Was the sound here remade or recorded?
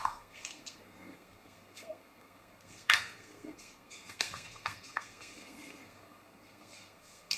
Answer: remade